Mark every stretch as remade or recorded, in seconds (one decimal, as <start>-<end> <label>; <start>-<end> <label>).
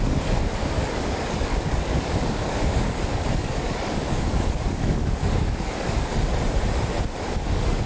0.0-6.1 remade; 6.1-7.2 recorded; 7.2-7.9 remade